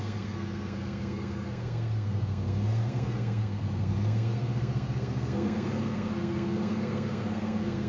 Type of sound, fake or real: fake